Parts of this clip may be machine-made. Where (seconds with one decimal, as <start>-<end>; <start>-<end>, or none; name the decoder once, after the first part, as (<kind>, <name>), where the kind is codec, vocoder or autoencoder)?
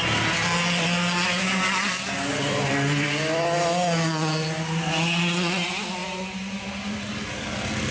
none